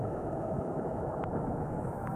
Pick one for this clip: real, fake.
fake